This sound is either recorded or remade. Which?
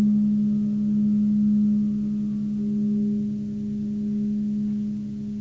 recorded